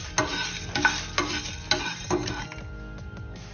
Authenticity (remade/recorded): recorded